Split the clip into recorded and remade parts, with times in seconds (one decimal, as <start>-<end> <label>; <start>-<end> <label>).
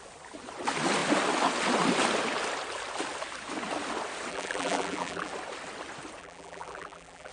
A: 0.0-4.3 recorded; 4.3-5.3 remade; 5.3-6.2 recorded; 6.2-7.3 remade